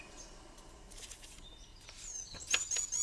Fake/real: real